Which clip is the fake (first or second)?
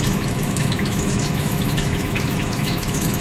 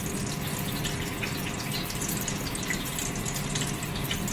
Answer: first